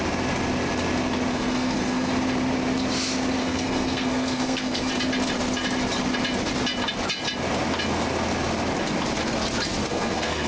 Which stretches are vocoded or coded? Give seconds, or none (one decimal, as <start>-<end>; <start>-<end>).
1.3-2.1; 3.4-4.9; 9.8-10.5